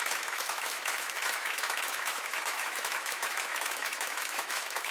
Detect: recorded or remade remade